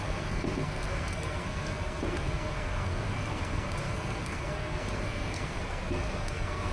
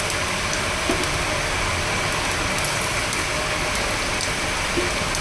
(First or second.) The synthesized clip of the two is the first